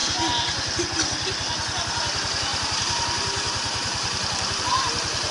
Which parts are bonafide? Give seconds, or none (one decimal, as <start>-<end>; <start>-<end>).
0.0-2.5; 4.6-5.3